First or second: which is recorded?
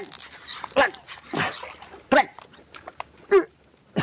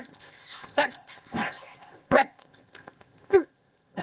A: first